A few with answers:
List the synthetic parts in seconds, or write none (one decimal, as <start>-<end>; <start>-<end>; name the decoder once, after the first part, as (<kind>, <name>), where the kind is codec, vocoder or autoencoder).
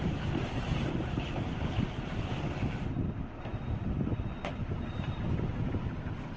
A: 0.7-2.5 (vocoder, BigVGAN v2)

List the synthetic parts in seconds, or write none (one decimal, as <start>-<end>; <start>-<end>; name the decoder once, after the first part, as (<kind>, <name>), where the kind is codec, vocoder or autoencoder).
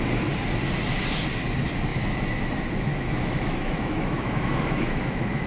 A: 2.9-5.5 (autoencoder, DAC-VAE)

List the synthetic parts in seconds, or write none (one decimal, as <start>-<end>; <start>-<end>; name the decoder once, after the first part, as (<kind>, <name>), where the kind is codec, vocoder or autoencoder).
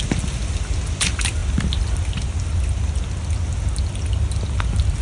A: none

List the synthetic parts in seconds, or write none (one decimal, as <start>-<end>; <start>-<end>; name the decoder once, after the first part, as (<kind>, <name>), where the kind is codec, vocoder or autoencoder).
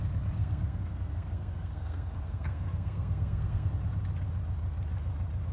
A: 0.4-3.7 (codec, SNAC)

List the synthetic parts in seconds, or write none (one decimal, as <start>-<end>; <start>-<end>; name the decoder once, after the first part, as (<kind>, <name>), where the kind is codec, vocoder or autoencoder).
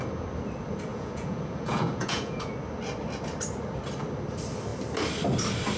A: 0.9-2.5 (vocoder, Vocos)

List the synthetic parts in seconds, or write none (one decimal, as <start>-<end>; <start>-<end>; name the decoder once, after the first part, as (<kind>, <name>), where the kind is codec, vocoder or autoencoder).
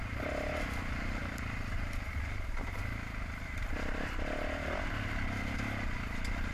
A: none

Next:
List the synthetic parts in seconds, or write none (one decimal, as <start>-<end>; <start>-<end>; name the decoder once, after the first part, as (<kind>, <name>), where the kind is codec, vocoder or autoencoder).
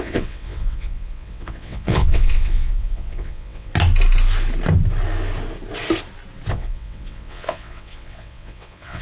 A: 0.0-3.7 (vocoder, WaveNeXt); 6.5-9.0